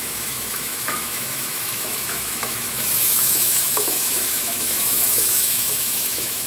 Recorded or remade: remade